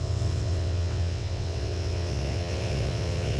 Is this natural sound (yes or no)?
no